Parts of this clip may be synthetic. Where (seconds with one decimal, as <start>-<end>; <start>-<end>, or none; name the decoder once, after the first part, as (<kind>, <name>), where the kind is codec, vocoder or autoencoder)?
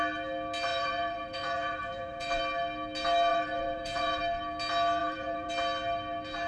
0.7-2.4 (vocoder, Vocos); 3.3-4.2; 5.0-5.5